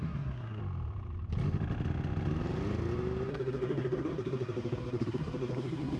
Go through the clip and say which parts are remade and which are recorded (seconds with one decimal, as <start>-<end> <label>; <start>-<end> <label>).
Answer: 0.0-0.6 remade; 0.6-3.3 recorded; 3.3-6.0 remade